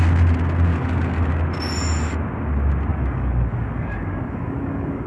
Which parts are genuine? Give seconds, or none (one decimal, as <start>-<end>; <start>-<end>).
0.0-0.7; 1.3-2.9